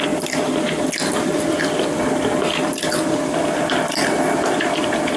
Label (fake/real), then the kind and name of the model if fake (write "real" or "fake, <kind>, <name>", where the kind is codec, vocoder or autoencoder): real